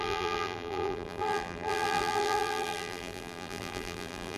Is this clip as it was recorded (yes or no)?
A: no